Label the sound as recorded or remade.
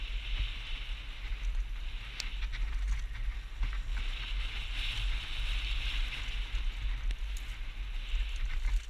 recorded